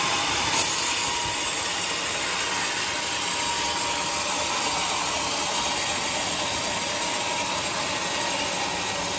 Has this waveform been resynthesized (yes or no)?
no